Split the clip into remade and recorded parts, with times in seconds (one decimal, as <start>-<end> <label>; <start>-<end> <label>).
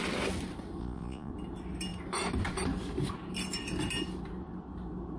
0.0-0.8 recorded; 0.8-1.3 remade; 1.3-5.2 recorded